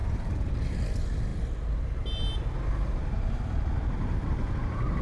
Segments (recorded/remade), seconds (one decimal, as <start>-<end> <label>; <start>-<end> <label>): 0.0-5.0 recorded